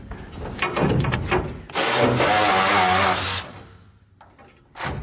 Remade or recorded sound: recorded